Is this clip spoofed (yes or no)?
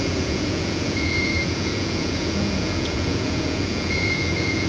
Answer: yes